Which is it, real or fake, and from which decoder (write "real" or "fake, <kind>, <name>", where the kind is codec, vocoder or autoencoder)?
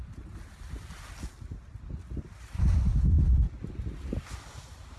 real